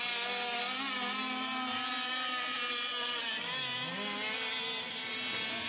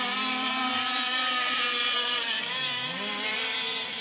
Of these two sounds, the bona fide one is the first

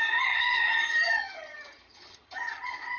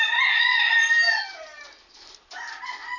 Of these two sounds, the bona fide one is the second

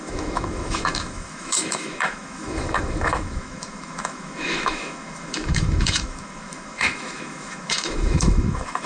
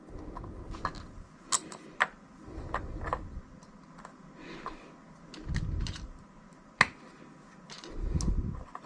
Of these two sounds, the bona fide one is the second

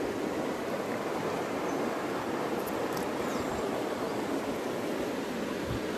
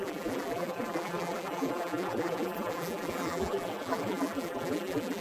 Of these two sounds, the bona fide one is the first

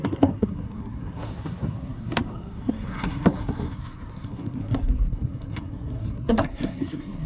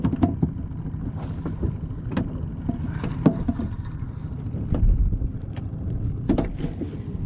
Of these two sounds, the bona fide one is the second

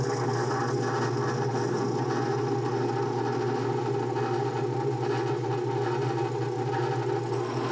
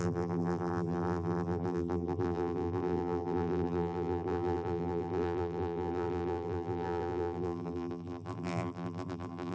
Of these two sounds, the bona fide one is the first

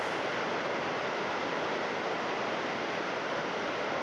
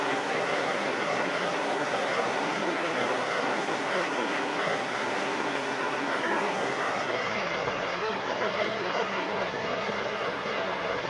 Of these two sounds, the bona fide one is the first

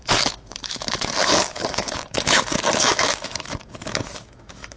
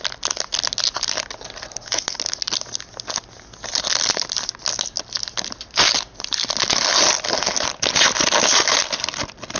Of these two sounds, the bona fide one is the second